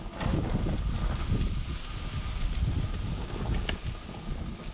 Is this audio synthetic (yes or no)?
no